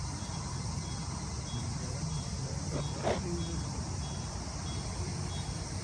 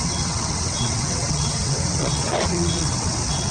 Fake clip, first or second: second